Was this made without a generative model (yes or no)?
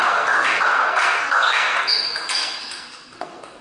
no